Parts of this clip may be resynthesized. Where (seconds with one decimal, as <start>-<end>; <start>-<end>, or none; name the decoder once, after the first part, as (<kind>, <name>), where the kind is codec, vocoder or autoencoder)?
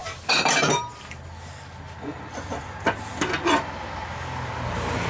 0.0-1.0 (vocoder, BigVGAN v2)